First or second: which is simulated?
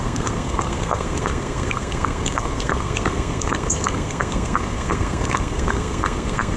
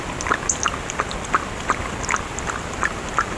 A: first